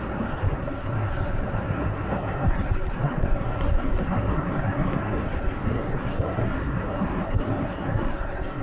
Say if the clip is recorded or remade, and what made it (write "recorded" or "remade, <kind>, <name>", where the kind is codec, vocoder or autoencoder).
remade, codec, SNAC